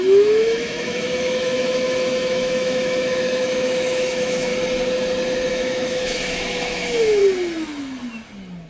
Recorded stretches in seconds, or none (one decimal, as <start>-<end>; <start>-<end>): 4.5-5.5; 7.2-8.7